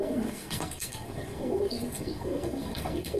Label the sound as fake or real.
fake